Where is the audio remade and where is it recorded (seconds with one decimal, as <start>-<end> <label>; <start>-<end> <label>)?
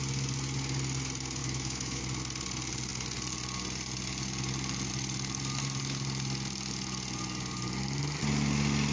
0.0-1.4 recorded; 1.4-2.0 remade; 2.0-8.9 recorded